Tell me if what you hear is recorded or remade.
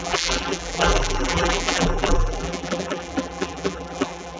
remade